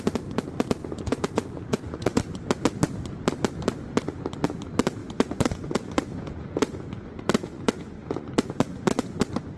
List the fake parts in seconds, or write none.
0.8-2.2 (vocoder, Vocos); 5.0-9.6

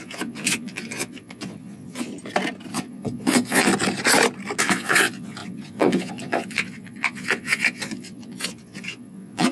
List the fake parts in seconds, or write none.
0.0-2.1 (vocoder, Vocos); 2.7-3.7; 4.6-9.5

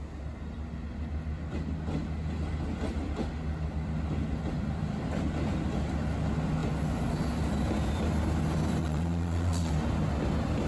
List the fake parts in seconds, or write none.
8.8-9.7 (vocoder, Vocos)

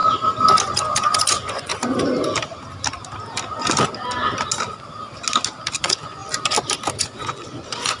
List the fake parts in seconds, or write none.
0.6-1.7 (vocoder, Vocos); 5.8-6.2; 7.0-8.0

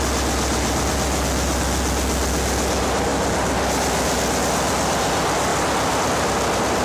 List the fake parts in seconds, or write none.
none

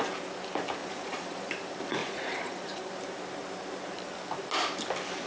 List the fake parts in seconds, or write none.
0.8-1.5 (vocoder, Vocos); 2.0-2.9

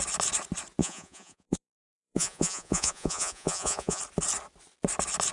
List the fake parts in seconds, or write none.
0.8-4.0 (vocoder, Vocos)